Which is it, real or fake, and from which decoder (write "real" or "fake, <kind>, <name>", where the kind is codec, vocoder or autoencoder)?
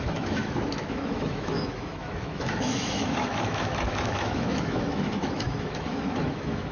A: fake, autoencoder, DAC-VAE